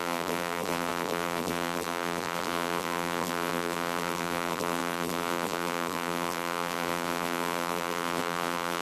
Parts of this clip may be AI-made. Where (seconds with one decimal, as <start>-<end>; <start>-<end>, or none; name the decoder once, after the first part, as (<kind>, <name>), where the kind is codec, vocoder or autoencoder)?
0.0-8.8 (vocoder, BigVGAN v2)